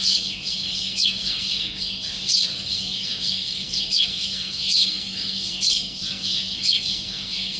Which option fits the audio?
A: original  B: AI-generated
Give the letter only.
B